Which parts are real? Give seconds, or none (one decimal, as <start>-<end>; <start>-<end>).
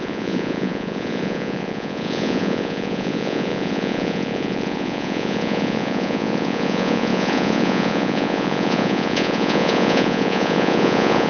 none